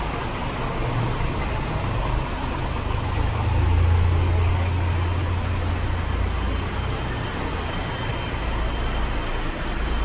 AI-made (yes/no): no